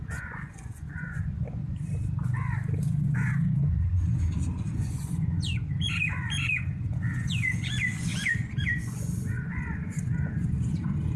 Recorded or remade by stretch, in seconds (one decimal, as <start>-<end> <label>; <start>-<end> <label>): 0.0-1.6 remade; 1.6-2.8 recorded; 2.8-11.2 remade